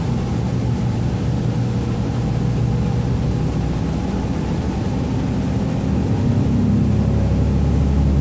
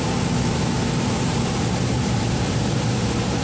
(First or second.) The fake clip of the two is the second